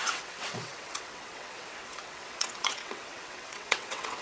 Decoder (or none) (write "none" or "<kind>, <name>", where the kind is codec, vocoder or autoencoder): vocoder, WaveNeXt